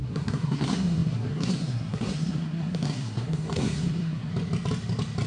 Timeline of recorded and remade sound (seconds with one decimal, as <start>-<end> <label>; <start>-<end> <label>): 0.0-4.3 remade; 4.3-5.3 recorded